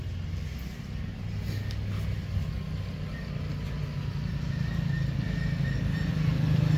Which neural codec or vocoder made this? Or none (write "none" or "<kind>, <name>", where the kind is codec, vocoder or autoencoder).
none